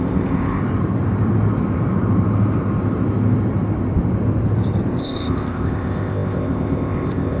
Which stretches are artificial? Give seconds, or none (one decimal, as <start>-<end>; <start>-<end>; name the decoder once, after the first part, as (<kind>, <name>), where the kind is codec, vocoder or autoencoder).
0.0-0.6 (codec, ZipCodec); 5.0-7.4